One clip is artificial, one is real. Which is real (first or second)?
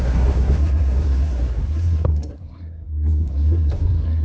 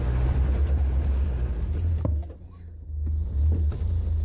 second